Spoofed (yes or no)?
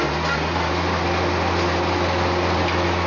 no